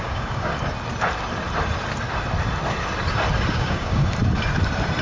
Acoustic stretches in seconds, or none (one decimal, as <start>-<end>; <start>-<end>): 0.5-3.5; 4.0-5.0